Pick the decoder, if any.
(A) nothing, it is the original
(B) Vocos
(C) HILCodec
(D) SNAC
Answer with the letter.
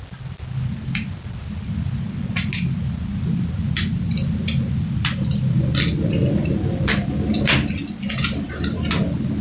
A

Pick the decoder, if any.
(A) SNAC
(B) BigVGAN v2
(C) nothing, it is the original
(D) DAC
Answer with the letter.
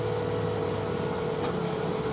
C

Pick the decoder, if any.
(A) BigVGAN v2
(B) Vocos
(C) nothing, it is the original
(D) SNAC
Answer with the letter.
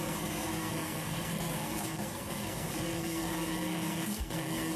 D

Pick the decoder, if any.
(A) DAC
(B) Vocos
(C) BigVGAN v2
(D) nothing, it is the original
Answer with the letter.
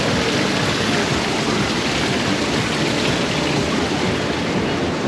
D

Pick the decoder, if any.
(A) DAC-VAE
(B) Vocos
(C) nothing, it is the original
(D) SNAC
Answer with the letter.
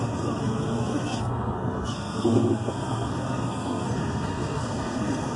D